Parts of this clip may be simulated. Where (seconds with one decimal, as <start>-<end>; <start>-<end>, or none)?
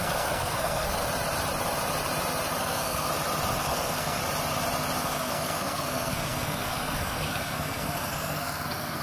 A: 0.0-1.0; 2.6-3.1; 3.6-4.2; 5.0-9.0